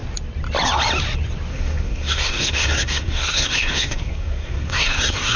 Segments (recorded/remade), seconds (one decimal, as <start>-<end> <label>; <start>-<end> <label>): 0.0-1.5 recorded; 1.5-5.4 remade